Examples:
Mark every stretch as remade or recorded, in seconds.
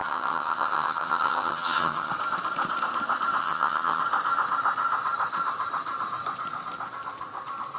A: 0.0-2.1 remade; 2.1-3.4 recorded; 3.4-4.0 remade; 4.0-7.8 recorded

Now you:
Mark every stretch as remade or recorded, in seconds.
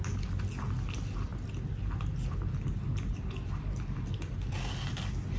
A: 0.0-5.4 recorded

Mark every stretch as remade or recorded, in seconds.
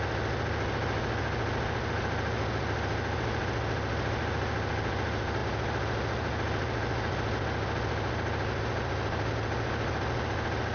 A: 0.0-10.7 recorded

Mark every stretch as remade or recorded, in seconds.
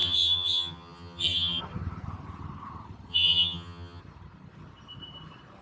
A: 0.0-1.6 remade; 1.6-3.1 recorded; 3.1-4.0 remade; 4.0-5.6 recorded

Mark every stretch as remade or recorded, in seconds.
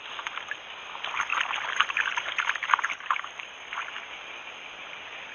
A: 0.0-5.3 recorded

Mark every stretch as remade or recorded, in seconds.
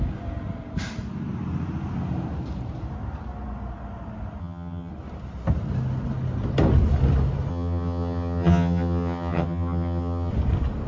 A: 0.0-4.4 recorded; 4.4-4.9 remade; 4.9-7.5 recorded; 7.5-10.3 remade; 10.3-10.9 recorded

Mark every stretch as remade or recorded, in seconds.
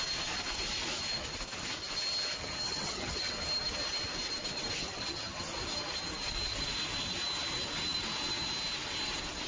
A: 0.0-2.4 recorded; 2.4-3.3 remade; 3.3-4.8 recorded; 4.8-5.4 remade; 5.4-9.5 recorded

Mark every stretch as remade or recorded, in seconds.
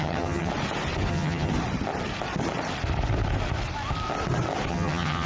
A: 0.0-0.5 remade; 0.5-1.1 recorded; 1.1-1.5 remade; 1.5-4.7 recorded; 4.7-5.3 remade